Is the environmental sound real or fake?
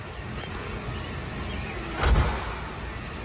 real